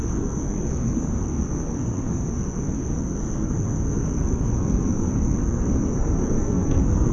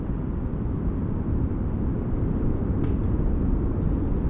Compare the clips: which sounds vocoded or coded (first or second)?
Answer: first